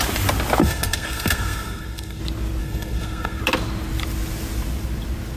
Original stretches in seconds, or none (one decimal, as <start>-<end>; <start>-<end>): 0.0-0.6; 2.2-2.6; 3.4-5.4